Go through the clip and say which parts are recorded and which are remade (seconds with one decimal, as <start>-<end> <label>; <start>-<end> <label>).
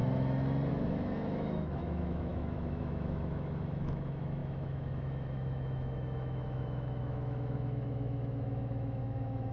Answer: 0.0-0.7 recorded; 0.7-9.5 remade